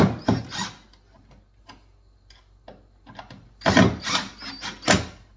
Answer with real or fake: real